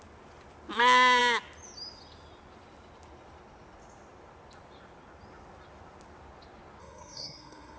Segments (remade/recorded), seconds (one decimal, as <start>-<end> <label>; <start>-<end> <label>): 0.0-6.8 recorded; 6.8-7.8 remade